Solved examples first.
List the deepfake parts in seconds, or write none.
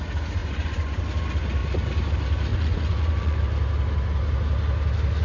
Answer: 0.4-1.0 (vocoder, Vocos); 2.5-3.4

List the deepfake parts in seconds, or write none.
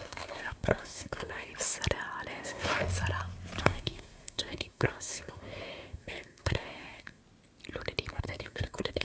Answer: 0.0-1.5 (codec, SNAC); 2.3-2.7; 3.6-7.2; 8.1-9.0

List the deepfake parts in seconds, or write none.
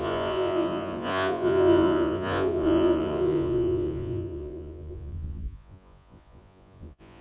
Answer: 0.0-7.2 (vocoder, Vocos)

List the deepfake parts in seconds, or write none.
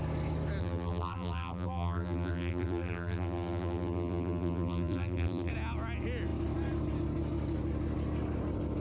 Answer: 0.6-5.5 (vocoder, BigVGAN v2)